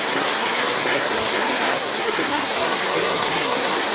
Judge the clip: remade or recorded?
remade